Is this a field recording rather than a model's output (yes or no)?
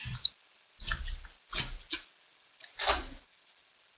yes